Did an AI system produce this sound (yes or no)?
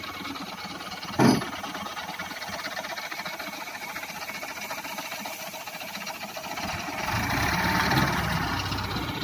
no